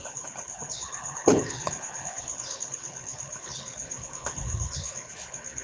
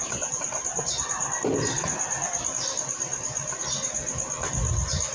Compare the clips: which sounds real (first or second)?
second